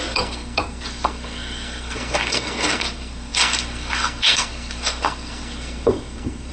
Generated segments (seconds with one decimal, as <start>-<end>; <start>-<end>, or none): 0.0-6.5